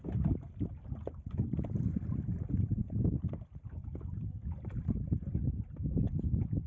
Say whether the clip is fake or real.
real